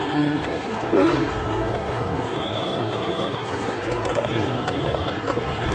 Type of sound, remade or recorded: remade